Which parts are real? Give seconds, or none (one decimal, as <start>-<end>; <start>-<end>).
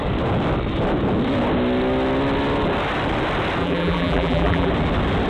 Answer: 0.0-3.6; 4.7-5.3